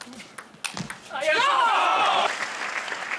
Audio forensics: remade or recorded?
recorded